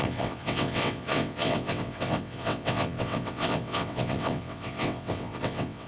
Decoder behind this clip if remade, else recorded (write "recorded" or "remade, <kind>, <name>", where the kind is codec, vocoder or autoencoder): remade, vocoder, WaveNeXt